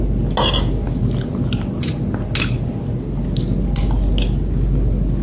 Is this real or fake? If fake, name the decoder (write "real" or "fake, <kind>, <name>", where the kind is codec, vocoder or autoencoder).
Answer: real